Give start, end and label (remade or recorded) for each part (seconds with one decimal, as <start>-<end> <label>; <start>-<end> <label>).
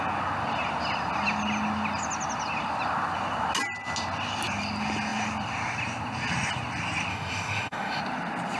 0.0-7.1 recorded; 7.1-8.0 remade; 8.0-8.6 recorded